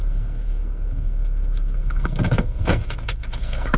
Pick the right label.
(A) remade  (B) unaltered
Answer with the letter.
A